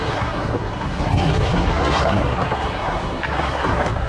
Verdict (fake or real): fake